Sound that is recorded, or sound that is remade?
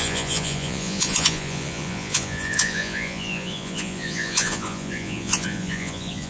remade